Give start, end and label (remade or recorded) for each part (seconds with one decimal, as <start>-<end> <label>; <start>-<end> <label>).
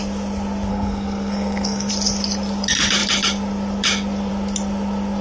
0.0-0.7 recorded; 0.7-1.9 remade; 1.9-5.2 recorded